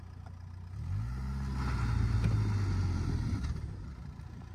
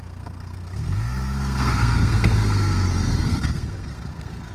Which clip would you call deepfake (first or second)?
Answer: second